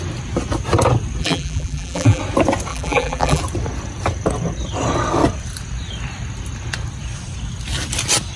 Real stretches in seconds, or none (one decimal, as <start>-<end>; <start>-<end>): 0.0-1.2; 2.2-2.7; 3.4-8.4